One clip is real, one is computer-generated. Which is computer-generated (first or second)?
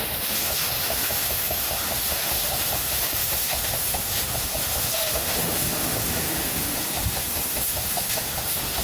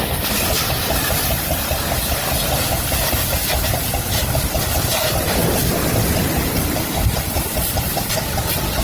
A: first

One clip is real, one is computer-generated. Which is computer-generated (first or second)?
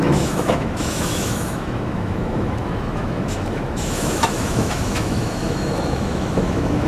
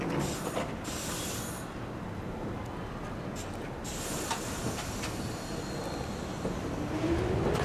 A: first